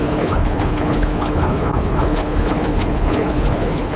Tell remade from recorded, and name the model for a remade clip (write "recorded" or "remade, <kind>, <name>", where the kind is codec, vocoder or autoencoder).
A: remade, codec, HILCodec